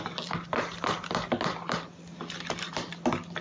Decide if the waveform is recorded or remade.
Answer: recorded